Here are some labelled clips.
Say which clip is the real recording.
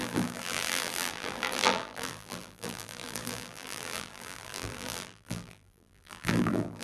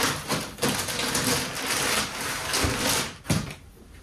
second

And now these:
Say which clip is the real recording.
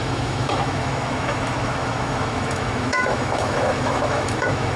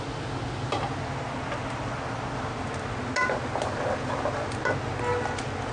second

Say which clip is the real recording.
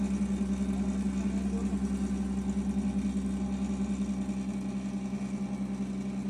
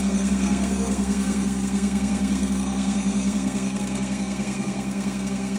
first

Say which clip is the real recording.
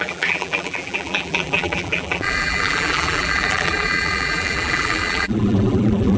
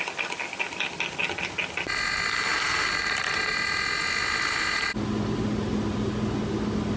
second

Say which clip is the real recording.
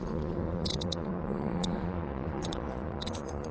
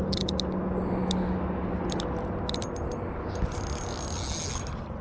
second